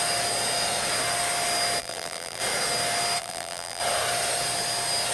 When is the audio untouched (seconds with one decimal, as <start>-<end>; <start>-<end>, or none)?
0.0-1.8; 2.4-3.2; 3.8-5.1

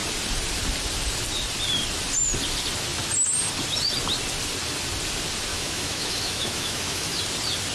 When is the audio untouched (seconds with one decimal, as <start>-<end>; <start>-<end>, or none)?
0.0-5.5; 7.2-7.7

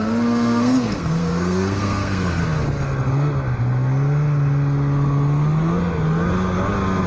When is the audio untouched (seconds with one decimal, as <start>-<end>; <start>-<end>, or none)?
2.4-7.1